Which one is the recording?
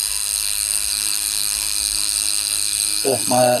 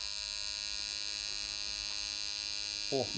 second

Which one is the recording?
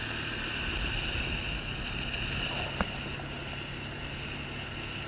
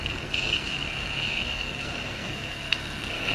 first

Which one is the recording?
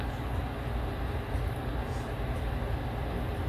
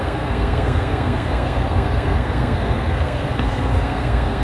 first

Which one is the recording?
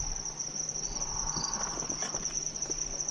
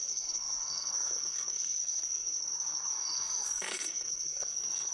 first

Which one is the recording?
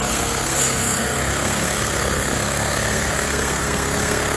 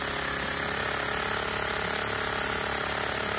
second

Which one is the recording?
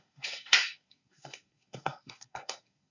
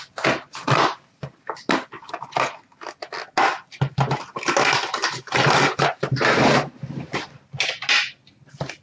second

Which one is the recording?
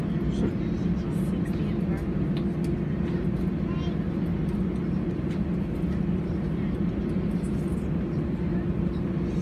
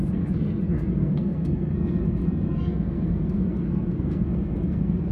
first